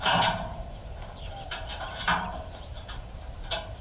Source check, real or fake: fake